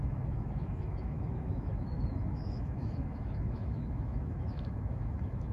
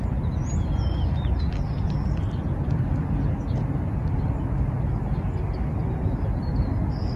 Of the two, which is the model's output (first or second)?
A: first